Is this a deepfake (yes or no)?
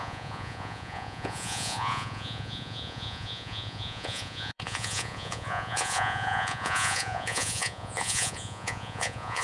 yes